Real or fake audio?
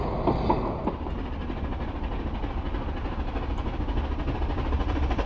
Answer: real